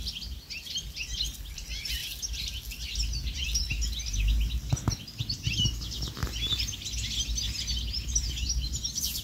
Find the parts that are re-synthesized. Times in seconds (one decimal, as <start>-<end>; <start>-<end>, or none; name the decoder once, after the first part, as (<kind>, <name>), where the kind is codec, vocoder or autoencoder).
none